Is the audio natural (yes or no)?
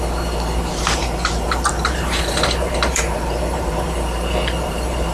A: no